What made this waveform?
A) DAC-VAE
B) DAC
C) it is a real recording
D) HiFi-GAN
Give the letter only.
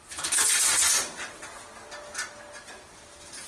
C